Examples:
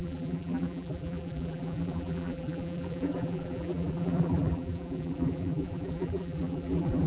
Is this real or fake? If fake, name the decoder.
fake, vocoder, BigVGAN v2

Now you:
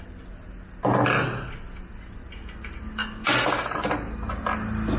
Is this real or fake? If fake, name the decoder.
real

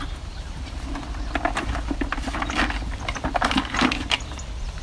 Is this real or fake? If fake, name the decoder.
fake, vocoder, BigVGAN v2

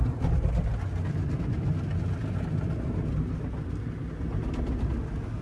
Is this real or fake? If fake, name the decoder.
real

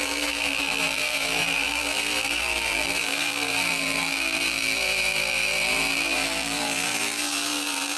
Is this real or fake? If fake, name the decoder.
fake, vocoder, BigVGAN v2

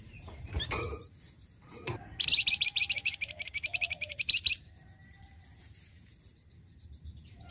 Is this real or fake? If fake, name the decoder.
fake, vocoder, BigVGAN v2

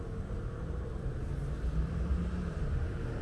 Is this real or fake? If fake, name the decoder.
fake, vocoder, BigVGAN v2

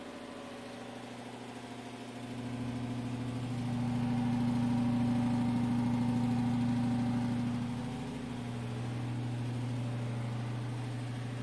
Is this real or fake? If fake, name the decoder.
real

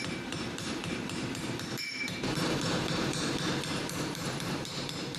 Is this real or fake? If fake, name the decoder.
fake, vocoder, BigVGAN v2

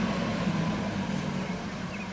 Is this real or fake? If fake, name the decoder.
fake, vocoder, BigVGAN v2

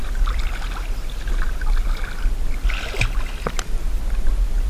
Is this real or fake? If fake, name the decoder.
real